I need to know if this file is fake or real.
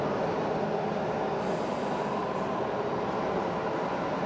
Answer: real